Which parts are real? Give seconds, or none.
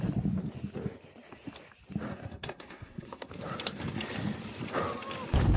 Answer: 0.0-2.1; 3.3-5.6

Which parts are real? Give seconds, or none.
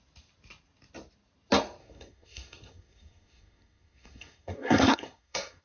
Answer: 0.0-1.8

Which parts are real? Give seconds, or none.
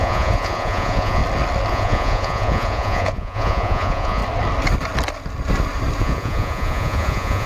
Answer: 1.2-1.7; 4.2-6.0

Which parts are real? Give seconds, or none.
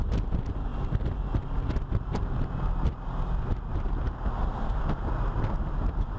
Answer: 0.7-4.4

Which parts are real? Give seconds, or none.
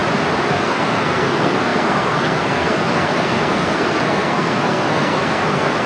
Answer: 0.0-0.5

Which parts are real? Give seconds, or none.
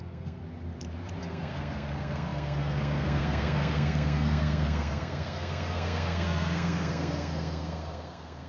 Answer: 0.4-1.2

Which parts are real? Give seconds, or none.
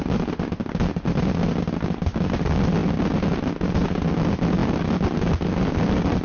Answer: 0.0-6.2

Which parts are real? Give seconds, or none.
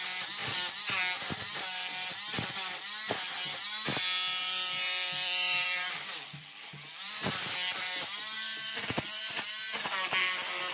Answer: 0.0-0.4; 1.0-4.4; 9.2-10.7